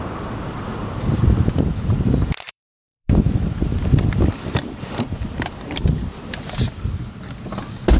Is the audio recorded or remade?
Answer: remade